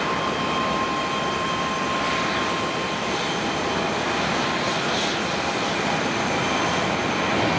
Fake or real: real